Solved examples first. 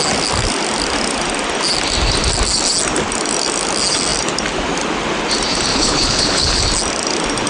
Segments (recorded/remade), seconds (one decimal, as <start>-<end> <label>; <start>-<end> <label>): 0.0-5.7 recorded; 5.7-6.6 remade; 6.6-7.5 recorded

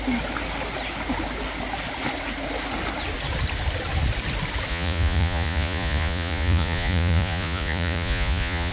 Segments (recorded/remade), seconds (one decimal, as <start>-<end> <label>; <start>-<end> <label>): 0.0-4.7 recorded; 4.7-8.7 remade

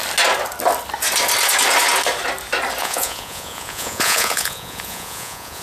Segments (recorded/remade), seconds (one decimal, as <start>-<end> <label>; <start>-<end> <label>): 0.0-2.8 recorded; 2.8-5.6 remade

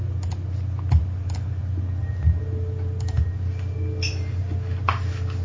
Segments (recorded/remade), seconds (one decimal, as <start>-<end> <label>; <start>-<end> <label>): 0.0-5.4 recorded

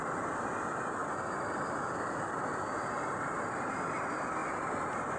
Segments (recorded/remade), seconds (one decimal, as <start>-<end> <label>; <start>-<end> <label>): 0.0-5.2 recorded